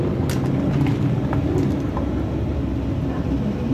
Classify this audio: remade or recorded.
recorded